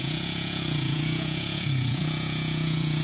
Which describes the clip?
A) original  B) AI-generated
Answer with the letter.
B